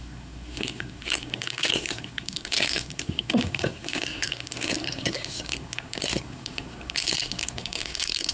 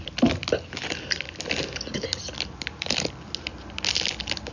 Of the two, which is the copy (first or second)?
first